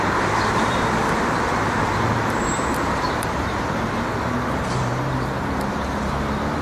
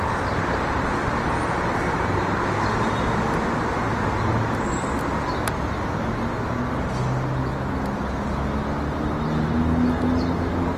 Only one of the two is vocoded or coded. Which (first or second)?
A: first